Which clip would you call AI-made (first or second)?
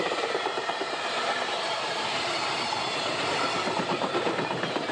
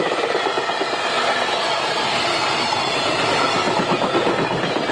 first